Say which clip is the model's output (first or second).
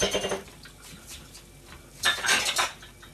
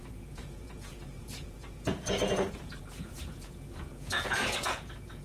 second